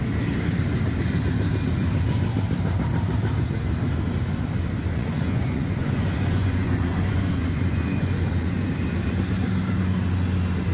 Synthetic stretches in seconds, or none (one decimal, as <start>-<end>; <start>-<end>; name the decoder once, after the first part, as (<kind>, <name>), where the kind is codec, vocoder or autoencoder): 4.8-8.7 (vocoder, Vocos)